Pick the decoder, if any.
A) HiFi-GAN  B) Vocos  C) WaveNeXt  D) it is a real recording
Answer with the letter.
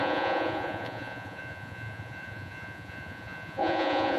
B